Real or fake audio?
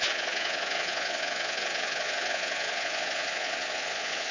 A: fake